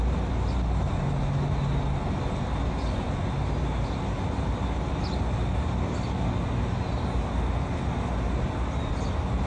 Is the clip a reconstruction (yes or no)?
no